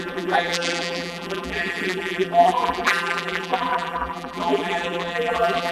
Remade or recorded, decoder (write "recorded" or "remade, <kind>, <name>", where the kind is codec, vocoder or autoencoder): remade, vocoder, BigVGAN v2